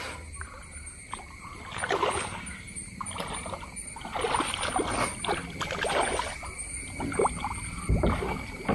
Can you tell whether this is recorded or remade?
recorded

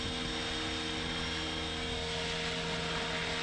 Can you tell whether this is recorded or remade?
recorded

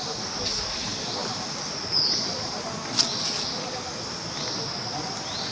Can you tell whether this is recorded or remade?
recorded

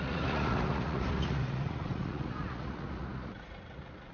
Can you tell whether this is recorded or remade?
remade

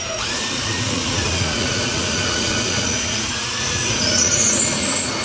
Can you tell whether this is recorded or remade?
remade